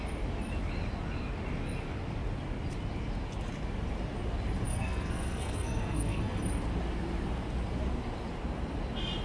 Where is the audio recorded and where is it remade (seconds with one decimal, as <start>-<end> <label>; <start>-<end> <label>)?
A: 0.0-4.7 recorded; 4.7-6.4 remade; 6.4-9.2 recorded